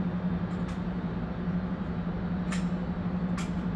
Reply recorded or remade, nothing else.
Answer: recorded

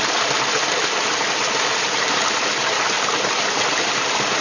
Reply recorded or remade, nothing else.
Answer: recorded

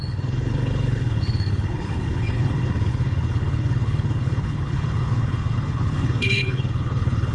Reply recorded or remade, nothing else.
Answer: remade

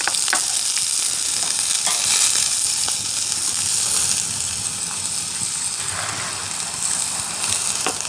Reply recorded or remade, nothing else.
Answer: recorded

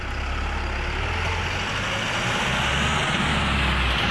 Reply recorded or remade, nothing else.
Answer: recorded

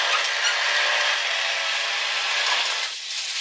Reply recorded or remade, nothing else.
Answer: recorded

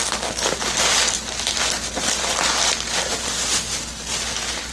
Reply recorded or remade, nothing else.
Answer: recorded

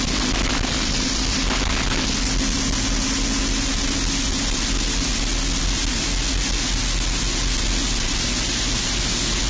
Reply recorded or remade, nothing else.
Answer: recorded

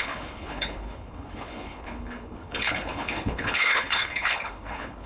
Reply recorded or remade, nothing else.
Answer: remade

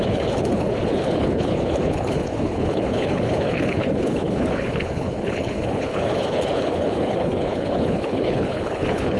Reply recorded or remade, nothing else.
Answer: remade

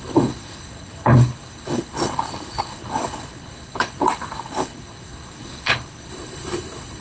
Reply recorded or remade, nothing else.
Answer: remade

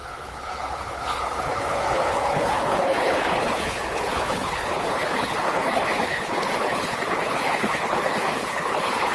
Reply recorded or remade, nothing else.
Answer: remade